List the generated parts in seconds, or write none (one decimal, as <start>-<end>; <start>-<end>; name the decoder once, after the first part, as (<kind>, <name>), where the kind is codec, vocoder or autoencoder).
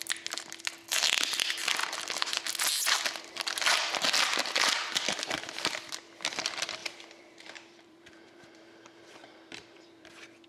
6.8-10.1 (vocoder, BigVGAN v2)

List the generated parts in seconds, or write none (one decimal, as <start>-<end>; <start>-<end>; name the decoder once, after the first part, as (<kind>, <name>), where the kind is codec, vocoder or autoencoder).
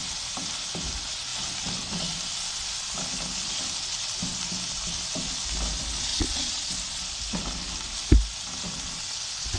6.1-6.7 (vocoder, Vocos)